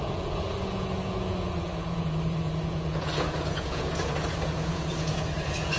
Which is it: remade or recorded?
remade